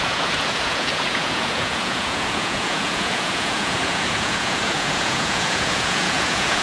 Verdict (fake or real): fake